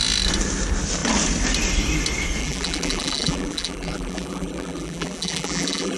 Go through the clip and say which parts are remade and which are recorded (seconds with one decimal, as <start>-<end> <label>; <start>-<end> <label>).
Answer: 0.0-2.4 recorded; 2.4-6.0 remade